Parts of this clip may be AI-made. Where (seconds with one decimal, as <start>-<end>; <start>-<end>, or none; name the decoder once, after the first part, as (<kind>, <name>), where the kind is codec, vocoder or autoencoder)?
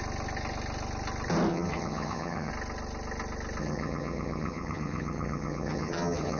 1.5-2.5 (vocoder, HiFi-GAN); 3.6-6.4